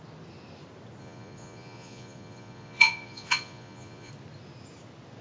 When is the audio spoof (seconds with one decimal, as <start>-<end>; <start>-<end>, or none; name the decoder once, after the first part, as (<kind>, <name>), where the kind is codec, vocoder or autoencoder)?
1.0-4.1 (vocoder, Vocos)